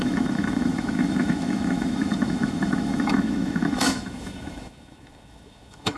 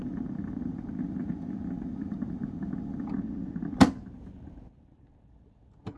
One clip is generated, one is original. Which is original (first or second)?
second